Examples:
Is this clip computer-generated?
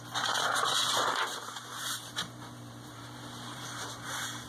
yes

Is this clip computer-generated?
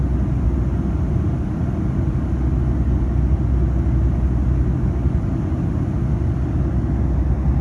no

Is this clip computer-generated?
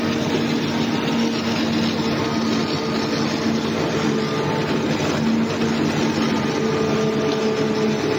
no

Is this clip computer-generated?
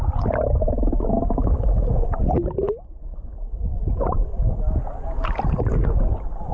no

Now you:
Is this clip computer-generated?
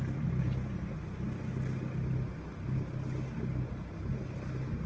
no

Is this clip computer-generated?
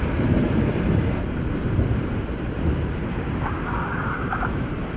yes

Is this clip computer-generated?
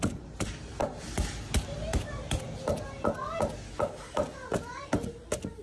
no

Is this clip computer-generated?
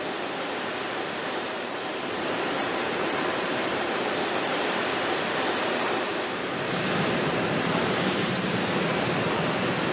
yes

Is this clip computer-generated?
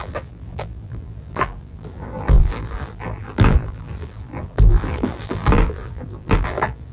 yes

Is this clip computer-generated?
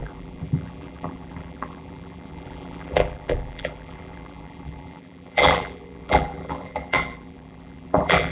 yes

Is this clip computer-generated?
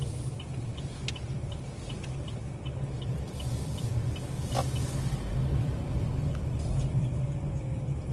yes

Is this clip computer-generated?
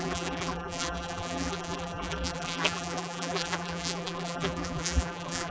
yes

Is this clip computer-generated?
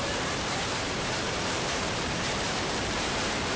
yes